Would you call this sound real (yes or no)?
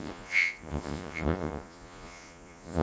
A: no